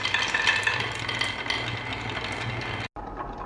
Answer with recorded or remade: recorded